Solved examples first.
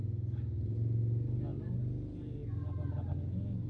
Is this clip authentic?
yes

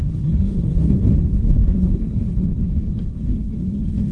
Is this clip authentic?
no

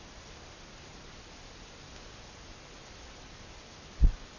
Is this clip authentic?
yes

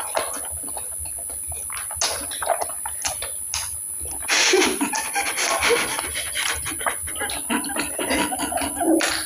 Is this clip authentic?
yes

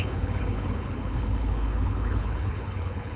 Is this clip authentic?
no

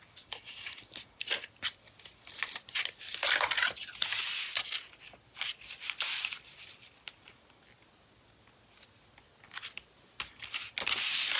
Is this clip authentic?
yes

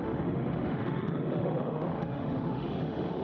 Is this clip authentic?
no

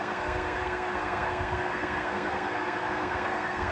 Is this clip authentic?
no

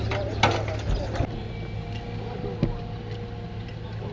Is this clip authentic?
yes